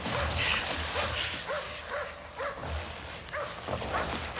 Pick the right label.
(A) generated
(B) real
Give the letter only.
B